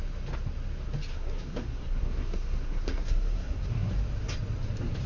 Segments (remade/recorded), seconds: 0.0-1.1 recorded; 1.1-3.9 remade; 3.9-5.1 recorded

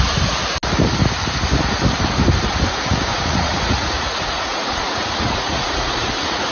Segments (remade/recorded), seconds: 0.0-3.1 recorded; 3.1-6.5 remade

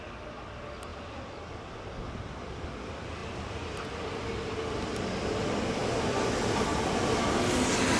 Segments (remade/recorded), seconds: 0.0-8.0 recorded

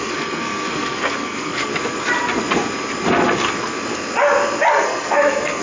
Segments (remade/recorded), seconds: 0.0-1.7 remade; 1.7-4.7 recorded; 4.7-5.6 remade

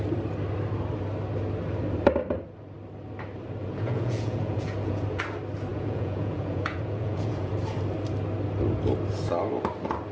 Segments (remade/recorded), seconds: 0.0-3.6 recorded; 3.6-5.2 remade; 5.2-5.7 recorded; 5.7-7.5 remade; 7.5-10.1 recorded

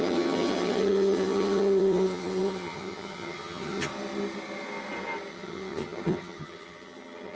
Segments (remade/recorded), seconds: 0.0-3.9 remade; 3.9-5.3 recorded; 5.3-7.3 remade

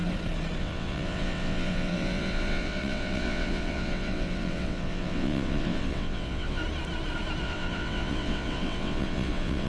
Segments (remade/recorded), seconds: 0.0-0.6 recorded; 0.6-6.6 remade; 6.6-7.4 recorded; 7.4-9.7 remade